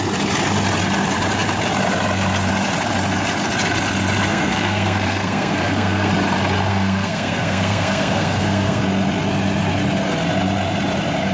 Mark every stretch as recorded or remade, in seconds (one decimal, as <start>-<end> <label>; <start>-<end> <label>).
0.0-4.3 recorded; 4.3-6.1 remade; 6.1-6.7 recorded; 6.7-8.8 remade; 8.8-11.3 recorded

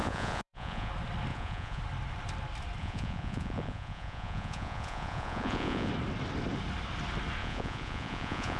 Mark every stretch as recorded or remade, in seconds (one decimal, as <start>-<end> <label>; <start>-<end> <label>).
0.0-0.9 remade; 0.9-1.3 recorded; 1.3-1.8 remade; 1.8-2.8 recorded; 2.8-5.9 remade; 5.9-7.4 recorded; 7.4-8.6 remade

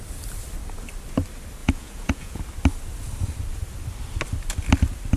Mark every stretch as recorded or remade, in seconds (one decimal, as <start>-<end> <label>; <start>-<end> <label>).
0.0-1.6 recorded; 1.6-2.4 remade; 2.4-5.2 recorded